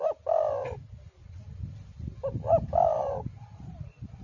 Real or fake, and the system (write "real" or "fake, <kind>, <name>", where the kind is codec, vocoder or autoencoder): fake, vocoder, BigVGAN v2